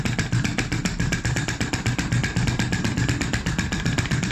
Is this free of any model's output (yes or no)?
no